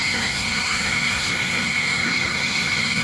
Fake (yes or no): yes